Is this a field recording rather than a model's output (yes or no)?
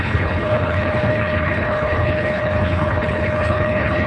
no